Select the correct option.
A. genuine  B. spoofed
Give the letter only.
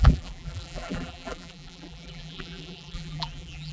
B